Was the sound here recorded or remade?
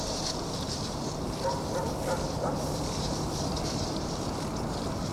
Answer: remade